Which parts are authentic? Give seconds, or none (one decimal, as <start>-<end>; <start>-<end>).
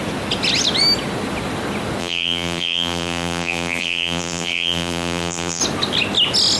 0.0-2.0; 5.6-6.6